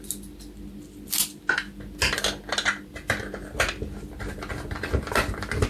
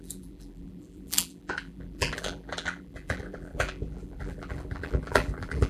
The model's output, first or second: second